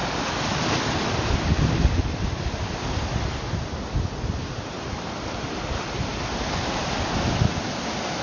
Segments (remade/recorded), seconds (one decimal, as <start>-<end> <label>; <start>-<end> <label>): 0.0-8.2 recorded